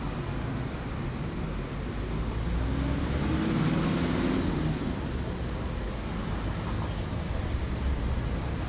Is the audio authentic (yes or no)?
yes